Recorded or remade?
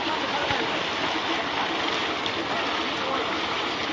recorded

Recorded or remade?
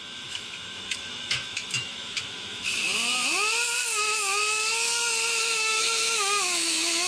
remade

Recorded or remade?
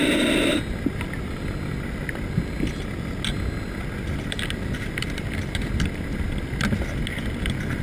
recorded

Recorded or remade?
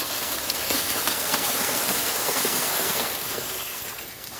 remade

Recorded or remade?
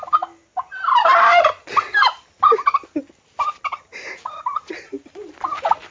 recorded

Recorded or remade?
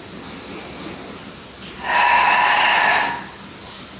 recorded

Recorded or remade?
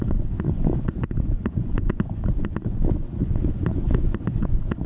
remade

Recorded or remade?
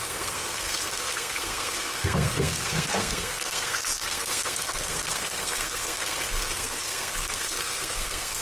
remade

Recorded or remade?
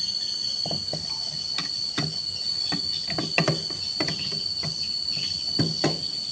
recorded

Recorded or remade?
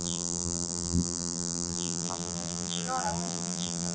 remade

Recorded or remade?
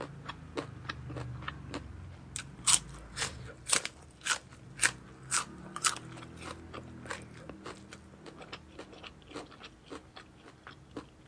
recorded